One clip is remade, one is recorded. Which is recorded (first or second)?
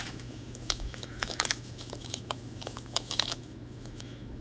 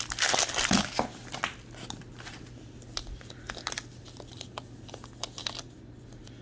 second